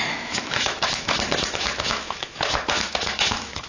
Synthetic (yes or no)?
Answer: yes